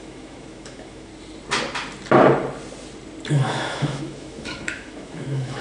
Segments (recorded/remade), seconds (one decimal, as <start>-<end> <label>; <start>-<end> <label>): 0.0-1.1 remade; 1.1-3.3 recorded; 3.3-5.6 remade